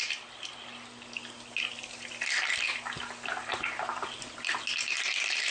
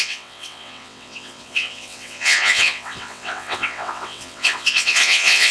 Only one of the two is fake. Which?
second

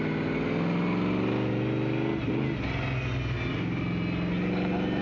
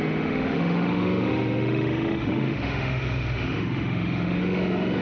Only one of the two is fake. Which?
second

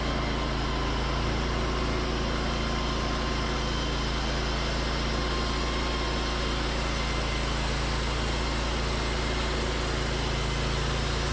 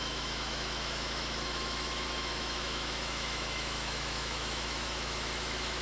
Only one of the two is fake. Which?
second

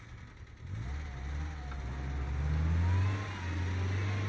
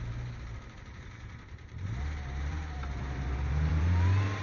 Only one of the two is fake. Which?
second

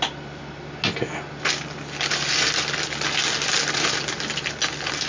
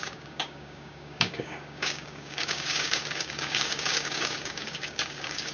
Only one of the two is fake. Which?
second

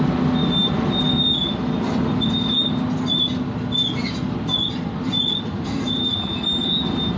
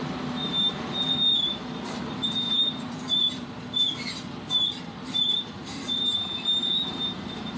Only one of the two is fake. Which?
second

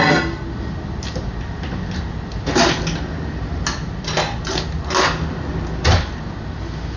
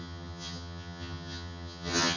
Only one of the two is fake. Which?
second